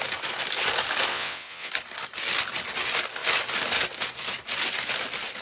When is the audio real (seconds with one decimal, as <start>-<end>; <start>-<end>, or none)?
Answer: 0.0-1.1; 1.7-5.4